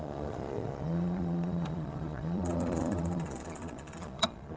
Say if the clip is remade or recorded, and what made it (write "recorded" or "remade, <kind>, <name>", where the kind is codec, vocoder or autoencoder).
remade, vocoder, Vocos